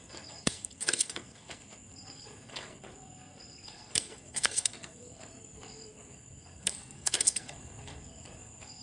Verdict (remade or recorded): remade